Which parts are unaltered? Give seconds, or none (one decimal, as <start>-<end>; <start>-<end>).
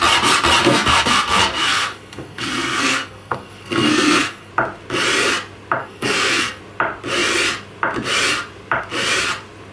0.0-0.6; 4.5-5.8; 6.6-9.7